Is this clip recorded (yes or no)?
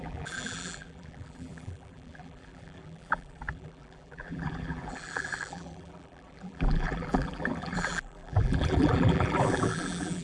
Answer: no